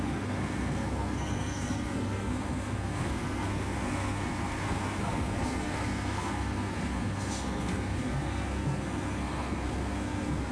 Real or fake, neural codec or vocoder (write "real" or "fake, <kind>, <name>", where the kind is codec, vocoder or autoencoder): fake, codec, SNAC